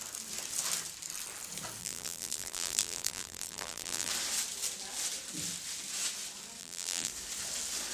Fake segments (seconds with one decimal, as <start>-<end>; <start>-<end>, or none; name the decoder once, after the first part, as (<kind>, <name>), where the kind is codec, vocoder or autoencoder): 1.8-4.1 (vocoder, BigVGAN v2); 6.6-7.1